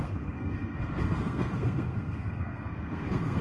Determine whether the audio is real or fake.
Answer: fake